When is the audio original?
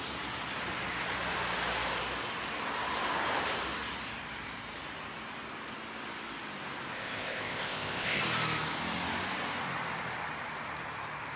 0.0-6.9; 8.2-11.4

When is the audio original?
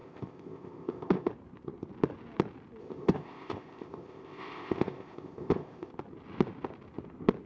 1.3-2.8; 5.9-7.5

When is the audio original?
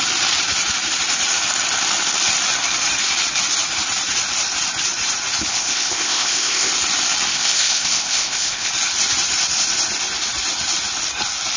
0.0-5.5; 6.7-7.3; 8.7-11.6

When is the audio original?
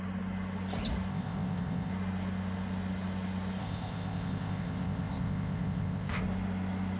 0.0-1.1; 1.9-3.6; 6.2-7.0